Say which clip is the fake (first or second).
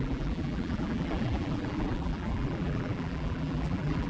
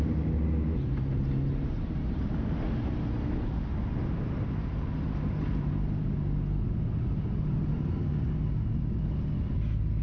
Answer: first